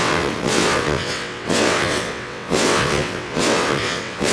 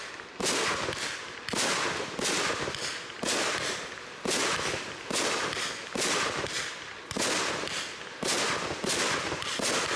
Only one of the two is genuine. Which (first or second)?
second